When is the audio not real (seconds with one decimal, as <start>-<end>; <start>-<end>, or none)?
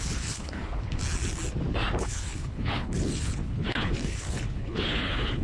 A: 0.0-1.0; 2.0-5.4